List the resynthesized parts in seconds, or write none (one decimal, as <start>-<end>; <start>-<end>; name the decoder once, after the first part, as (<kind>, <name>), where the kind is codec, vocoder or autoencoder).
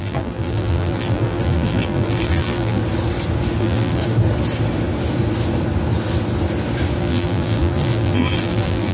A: 0.0-2.8 (vocoder, BigVGAN v2); 3.6-4.0; 7.0-8.9